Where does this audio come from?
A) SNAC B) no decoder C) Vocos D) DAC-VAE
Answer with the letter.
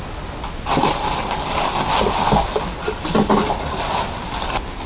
B